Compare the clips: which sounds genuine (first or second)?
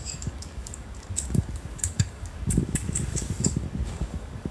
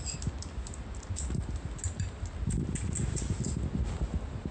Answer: second